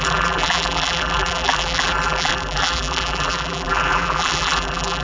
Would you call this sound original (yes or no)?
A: no